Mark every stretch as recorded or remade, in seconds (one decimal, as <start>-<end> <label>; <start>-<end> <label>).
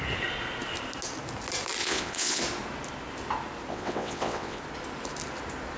0.0-1.8 recorded; 1.8-2.4 remade; 2.4-3.7 recorded; 3.7-4.6 remade; 4.6-5.8 recorded